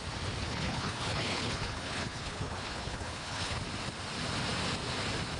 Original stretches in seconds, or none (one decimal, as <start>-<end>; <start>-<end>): 0.0-0.4; 3.6-5.4